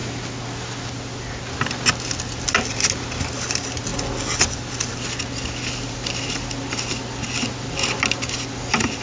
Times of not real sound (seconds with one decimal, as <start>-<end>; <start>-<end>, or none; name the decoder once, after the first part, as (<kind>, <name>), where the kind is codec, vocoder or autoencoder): none

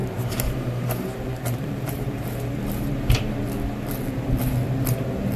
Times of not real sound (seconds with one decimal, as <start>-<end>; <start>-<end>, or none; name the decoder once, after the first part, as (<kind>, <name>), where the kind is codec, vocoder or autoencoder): 0.0-3.2 (vocoder, BigVGAN v2)

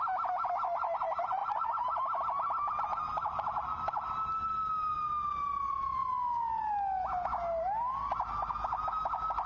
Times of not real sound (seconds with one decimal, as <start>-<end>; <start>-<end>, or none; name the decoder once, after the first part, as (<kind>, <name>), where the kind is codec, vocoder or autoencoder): none

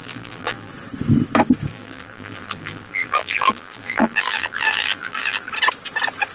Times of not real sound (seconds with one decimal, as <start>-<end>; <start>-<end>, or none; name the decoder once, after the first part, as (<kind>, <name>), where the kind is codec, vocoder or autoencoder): 0.0-0.7 (vocoder, BigVGAN v2); 1.7-5.5